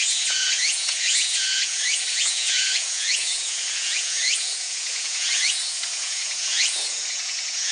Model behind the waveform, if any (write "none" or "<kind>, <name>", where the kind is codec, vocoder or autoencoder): vocoder, Vocos